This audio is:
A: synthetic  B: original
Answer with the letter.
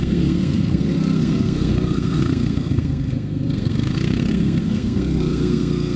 A